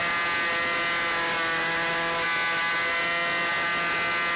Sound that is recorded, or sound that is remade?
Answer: recorded